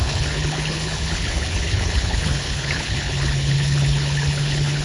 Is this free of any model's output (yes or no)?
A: no